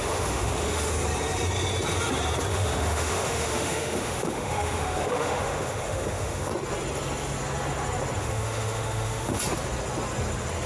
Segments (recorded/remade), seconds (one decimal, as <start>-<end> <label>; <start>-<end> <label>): 0.0-0.9 remade; 0.9-2.5 recorded; 2.5-6.5 remade; 6.5-8.2 recorded; 8.2-9.4 remade; 9.4-10.7 recorded

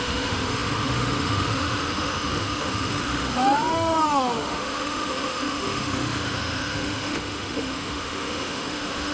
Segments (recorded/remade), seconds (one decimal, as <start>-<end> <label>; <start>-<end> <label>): 0.0-9.1 remade

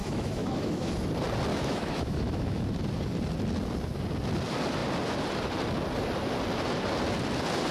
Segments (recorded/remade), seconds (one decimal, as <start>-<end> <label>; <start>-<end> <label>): 0.0-0.9 remade; 0.9-1.5 recorded; 1.5-2.6 remade; 2.6-7.7 recorded

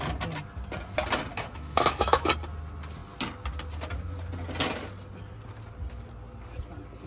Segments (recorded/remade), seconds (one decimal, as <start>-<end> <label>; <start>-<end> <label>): 0.0-1.3 recorded; 1.3-2.3 remade; 2.3-7.1 recorded

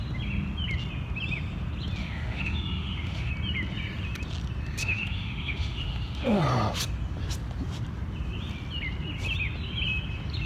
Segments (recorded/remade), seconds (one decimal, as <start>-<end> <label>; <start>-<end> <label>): 0.0-2.0 recorded; 2.0-3.3 remade; 3.3-4.8 recorded; 4.8-6.4 remade; 6.4-10.5 recorded

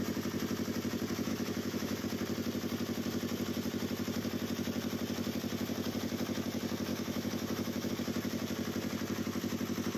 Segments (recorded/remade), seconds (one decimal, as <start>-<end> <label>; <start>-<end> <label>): 0.0-1.3 recorded; 1.3-2.0 remade; 2.0-6.9 recorded; 6.9-7.9 remade; 7.9-10.0 recorded

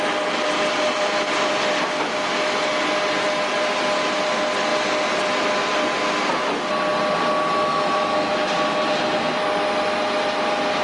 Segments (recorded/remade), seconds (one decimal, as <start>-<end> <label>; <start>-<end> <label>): 0.0-7.7 recorded; 7.7-8.3 remade; 8.3-10.8 recorded

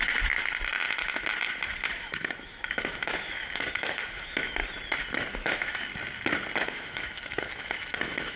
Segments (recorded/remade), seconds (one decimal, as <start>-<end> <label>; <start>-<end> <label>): 0.0-0.4 remade; 0.4-1.9 recorded; 1.9-4.6 remade; 4.6-5.3 recorded; 5.3-5.9 remade; 5.9-6.6 recorded; 6.6-8.4 remade